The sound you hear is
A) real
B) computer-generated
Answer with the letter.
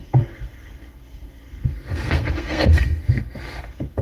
B